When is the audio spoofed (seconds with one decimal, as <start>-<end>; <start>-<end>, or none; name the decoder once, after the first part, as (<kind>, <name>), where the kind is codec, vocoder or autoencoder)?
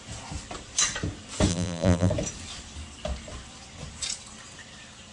1.5-2.1 (vocoder, BigVGAN v2)